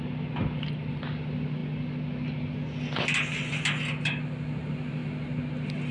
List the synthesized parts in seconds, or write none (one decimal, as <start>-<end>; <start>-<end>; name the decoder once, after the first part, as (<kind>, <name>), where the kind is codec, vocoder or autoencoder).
none